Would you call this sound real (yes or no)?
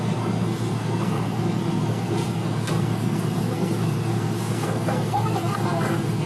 no